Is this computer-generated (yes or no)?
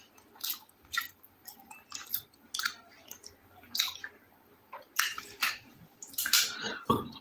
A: yes